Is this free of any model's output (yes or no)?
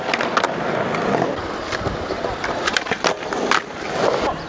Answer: yes